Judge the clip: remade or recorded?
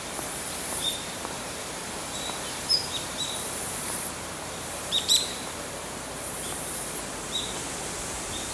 remade